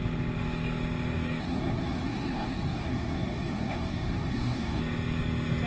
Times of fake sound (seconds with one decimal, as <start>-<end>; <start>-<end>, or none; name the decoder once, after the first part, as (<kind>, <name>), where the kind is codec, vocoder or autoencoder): 1.4-4.8 (codec, SNAC)